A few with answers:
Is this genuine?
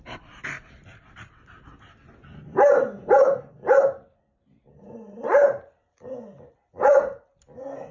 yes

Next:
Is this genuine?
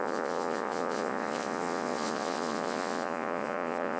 no